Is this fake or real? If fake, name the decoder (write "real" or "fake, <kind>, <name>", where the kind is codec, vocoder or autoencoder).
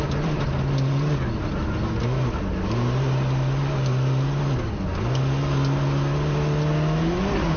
real